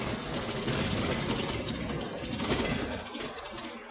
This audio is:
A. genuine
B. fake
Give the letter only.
A